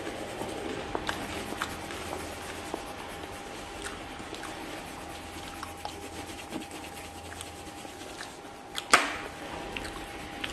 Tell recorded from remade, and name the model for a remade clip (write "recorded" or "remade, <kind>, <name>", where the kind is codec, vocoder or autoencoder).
recorded